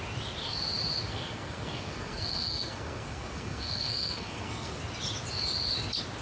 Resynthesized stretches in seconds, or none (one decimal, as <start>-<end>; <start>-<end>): 1.1-4.8